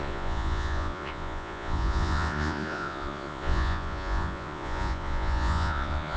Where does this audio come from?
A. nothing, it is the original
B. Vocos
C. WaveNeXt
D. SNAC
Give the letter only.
B